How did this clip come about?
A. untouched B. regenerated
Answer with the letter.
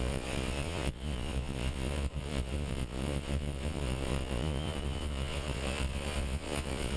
B